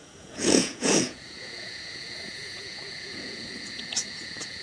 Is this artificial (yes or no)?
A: yes